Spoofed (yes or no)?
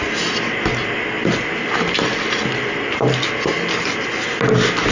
no